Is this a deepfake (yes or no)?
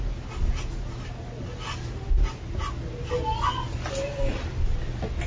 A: no